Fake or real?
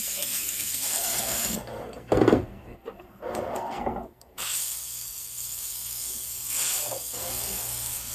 fake